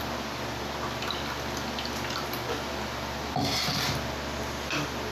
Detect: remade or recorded recorded